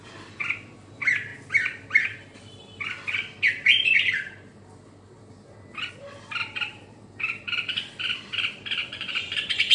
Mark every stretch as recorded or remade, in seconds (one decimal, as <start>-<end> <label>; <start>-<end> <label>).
0.0-8.8 recorded; 8.8-9.7 remade